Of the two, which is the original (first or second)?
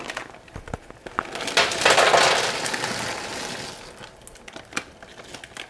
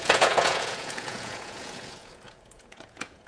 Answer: first